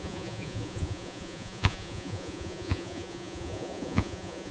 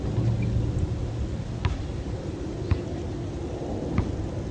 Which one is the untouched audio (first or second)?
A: second